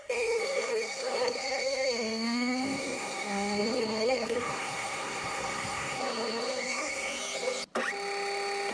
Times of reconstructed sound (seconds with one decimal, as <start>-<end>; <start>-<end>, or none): 0.0-7.2